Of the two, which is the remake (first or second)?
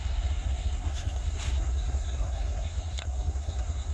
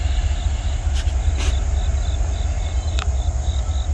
first